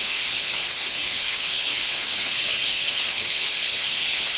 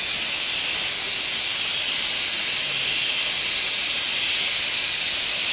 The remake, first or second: first